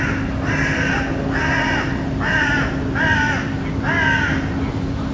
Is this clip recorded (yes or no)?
yes